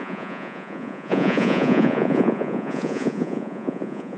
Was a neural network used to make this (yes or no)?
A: yes